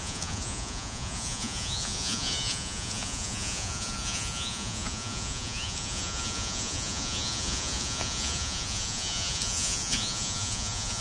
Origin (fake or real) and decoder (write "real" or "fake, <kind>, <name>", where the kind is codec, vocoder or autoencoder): fake, vocoder, Vocos